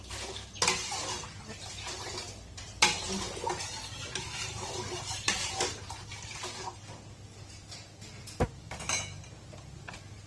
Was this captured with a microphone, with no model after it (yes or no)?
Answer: yes